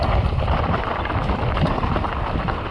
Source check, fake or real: real